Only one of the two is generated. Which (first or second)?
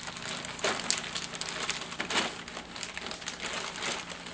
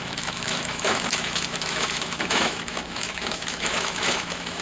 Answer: second